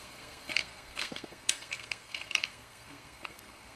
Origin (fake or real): fake